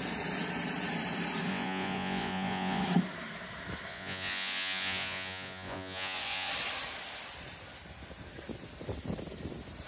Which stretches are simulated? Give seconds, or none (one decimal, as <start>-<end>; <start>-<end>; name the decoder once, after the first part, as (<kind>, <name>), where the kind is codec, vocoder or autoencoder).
1.5-2.8 (vocoder, Vocos); 3.9-6.5